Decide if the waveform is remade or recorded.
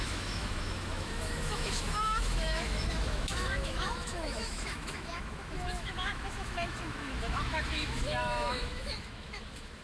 remade